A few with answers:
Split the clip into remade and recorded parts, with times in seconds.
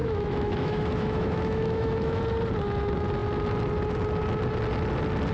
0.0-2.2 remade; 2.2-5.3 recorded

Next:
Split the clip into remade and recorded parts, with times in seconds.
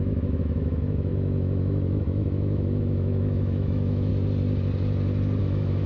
0.0-4.1 remade; 4.1-5.4 recorded; 5.4-5.9 remade